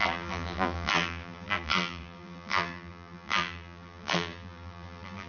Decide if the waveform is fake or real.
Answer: fake